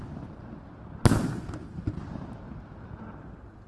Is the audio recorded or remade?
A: recorded